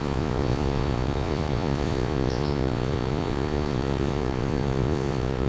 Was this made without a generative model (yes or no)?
no